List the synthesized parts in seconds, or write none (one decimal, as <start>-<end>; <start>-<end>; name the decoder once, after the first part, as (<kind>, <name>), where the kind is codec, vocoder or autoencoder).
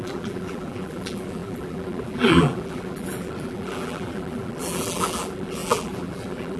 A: 0.0-6.6 (vocoder, BigVGAN v2)